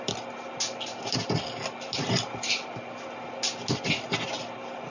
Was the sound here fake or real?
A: real